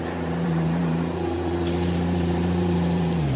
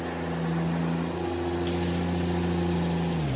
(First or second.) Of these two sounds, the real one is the second